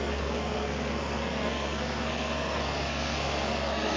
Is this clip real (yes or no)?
no